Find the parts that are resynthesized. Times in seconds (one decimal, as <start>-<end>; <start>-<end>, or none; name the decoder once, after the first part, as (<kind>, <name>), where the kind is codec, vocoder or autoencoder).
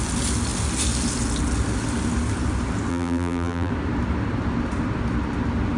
2.9-3.7 (vocoder, BigVGAN v2)